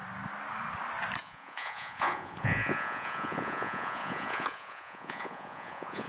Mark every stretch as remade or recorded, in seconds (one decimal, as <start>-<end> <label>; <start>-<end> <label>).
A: 0.0-1.2 recorded; 1.2-6.1 remade